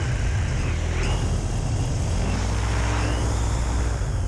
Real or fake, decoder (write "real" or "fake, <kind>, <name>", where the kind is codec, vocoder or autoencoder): real